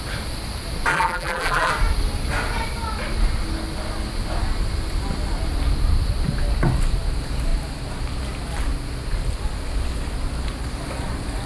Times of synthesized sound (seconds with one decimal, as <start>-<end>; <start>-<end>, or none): 0.9-1.7